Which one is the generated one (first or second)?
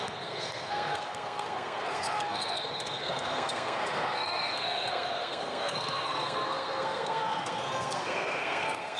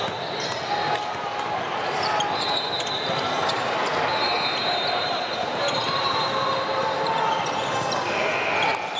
first